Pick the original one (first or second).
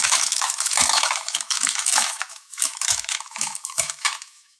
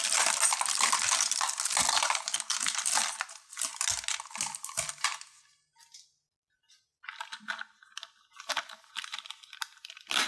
second